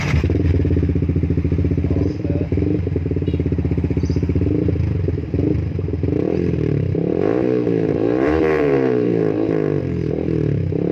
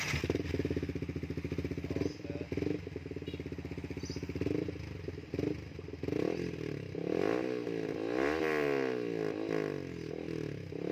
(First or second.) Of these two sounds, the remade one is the first